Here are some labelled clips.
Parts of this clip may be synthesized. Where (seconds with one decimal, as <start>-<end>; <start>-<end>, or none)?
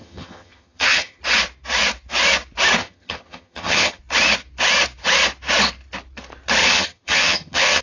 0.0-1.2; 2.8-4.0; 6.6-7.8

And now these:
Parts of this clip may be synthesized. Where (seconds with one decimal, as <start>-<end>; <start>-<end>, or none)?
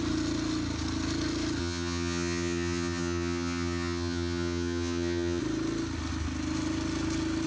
1.6-5.4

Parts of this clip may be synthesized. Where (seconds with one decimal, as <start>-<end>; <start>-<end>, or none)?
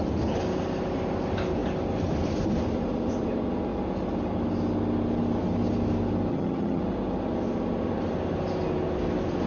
6.3-6.8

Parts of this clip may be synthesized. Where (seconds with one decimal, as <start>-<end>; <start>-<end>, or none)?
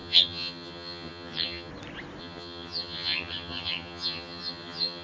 0.0-1.7; 2.2-5.0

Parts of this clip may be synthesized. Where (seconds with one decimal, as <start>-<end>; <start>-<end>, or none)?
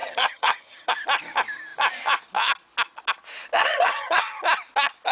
0.0-0.9; 3.6-4.4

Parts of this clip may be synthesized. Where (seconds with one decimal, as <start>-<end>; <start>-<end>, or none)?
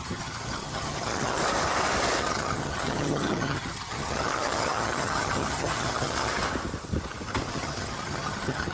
0.0-1.4; 2.2-6.3; 7.5-8.7